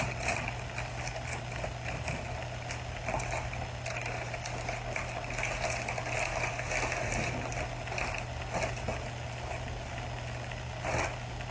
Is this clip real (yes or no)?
yes